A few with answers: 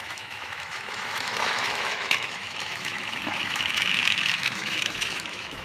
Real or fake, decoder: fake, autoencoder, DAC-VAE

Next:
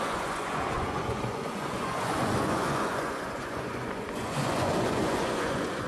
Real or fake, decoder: fake, vocoder, Vocos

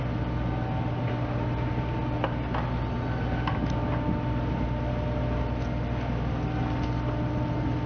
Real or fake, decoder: real